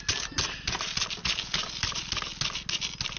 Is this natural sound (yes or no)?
yes